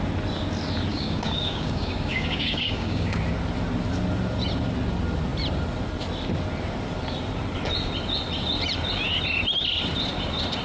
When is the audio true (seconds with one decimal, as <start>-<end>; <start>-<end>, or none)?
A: 0.0-0.9; 3.2-10.6